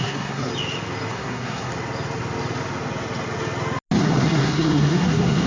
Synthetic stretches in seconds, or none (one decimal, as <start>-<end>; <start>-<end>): 0.0-0.5; 1.1-1.7; 4.0-5.5